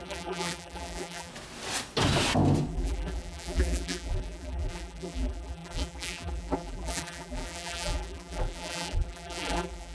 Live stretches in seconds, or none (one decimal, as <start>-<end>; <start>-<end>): 1.3-2.7